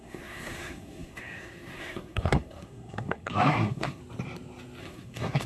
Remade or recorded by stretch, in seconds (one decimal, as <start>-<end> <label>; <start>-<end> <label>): 0.0-4.0 remade; 4.0-4.8 recorded; 4.8-5.5 remade